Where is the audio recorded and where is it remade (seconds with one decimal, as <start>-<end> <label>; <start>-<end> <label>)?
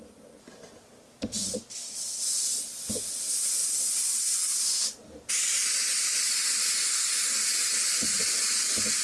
0.0-9.0 recorded